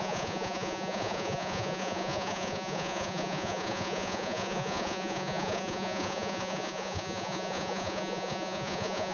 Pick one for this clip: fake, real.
fake